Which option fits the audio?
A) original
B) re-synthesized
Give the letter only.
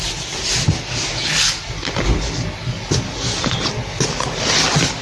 A